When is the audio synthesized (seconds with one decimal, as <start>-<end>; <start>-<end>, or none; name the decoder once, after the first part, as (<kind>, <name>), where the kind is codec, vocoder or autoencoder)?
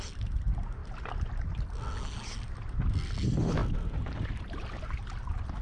3.6-5.6 (vocoder, BigVGAN v2)